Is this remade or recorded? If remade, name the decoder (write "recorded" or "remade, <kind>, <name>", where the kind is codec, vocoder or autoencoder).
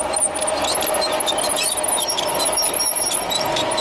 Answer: recorded